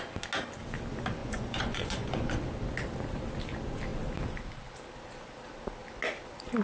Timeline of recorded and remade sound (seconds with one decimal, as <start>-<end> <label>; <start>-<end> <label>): 0.0-1.2 recorded; 1.2-2.3 remade; 2.3-6.6 recorded